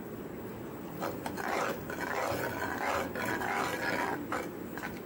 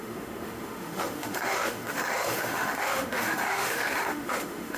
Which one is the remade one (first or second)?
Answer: second